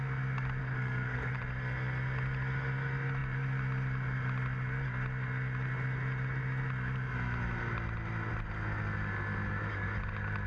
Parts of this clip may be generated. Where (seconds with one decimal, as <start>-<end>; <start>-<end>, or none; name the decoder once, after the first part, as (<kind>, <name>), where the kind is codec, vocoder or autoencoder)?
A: 0.6-1.3 (codec, SNAC)